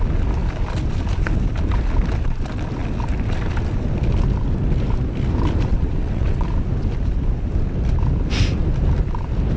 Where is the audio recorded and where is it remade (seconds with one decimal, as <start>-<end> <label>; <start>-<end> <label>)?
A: 0.0-5.7 recorded; 5.7-6.5 remade; 6.5-9.6 recorded